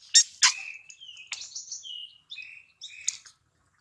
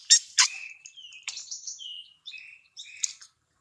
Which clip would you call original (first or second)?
first